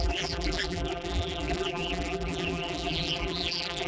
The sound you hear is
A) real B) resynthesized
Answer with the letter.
B